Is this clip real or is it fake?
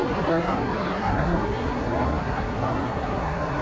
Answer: fake